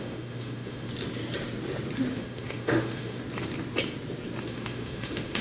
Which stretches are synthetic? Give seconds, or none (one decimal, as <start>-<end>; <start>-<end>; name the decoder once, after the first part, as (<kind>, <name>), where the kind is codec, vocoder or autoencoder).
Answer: 0.0-0.9 (autoencoder, DAC-VAE); 2.1-3.2; 4.4-5.4